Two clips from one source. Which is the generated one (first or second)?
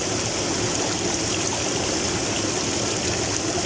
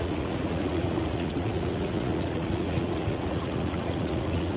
second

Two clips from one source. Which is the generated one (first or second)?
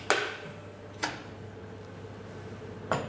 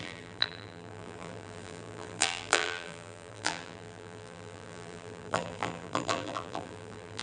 second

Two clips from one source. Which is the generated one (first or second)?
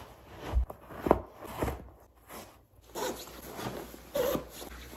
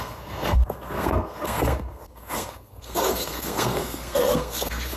second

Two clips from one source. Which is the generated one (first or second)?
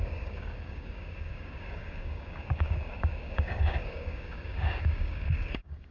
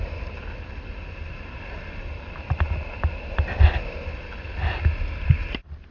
first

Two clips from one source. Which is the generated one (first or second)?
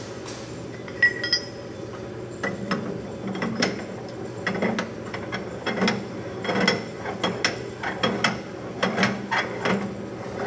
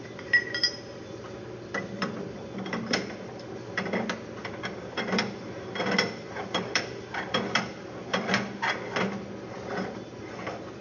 second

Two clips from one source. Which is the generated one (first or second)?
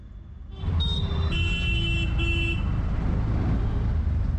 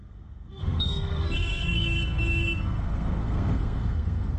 second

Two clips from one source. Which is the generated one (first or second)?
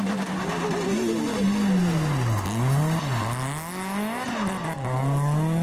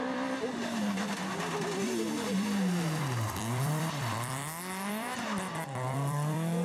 second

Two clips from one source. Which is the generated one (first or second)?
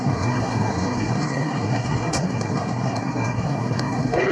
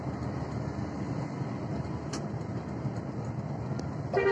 first